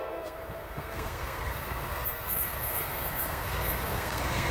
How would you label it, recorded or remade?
remade